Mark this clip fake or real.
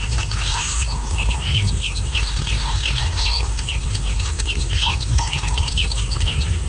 fake